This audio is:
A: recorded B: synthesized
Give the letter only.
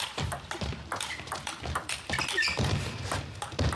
B